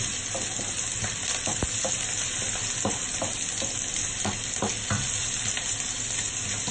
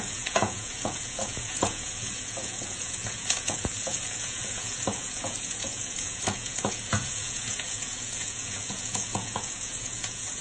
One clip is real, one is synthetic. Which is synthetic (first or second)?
second